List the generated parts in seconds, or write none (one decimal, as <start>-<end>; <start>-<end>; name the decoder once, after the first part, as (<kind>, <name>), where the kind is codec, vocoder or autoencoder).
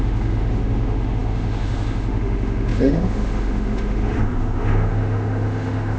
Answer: 0.0-6.0 (autoencoder, DAC-VAE)